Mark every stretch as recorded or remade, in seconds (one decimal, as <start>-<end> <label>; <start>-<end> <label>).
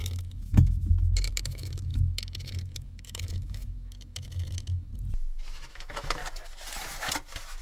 0.0-4.9 remade; 4.9-5.7 recorded; 5.7-6.2 remade; 6.2-7.6 recorded